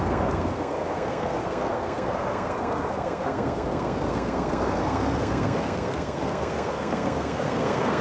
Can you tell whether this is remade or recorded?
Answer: remade